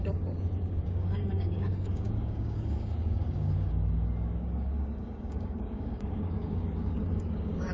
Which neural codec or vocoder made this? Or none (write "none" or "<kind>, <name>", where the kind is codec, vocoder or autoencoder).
codec, DAC